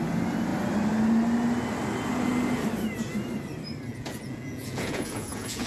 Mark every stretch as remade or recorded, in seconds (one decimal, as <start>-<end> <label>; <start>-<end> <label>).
0.0-3.9 recorded; 3.9-5.7 remade